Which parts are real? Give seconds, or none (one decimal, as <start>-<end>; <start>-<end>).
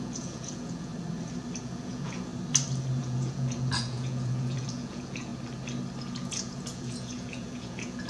0.9-1.6; 2.3-3.0; 5.3-6.0